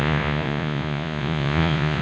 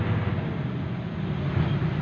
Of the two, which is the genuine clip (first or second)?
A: second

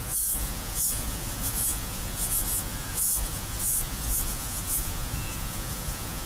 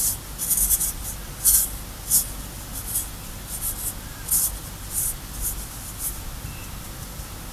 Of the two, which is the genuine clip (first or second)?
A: second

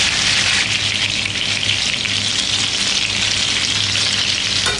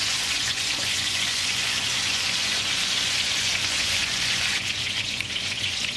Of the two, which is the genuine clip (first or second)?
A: first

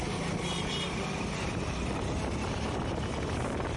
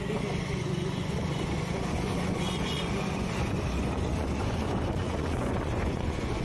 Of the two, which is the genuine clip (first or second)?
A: first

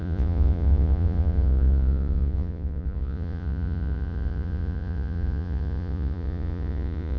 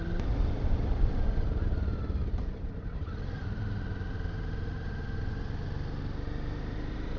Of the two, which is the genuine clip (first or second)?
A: second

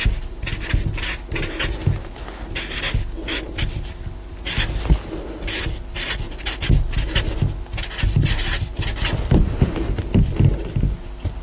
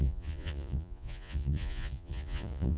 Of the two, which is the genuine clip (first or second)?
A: first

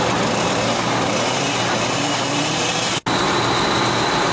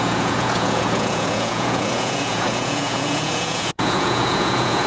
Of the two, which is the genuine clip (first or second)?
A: first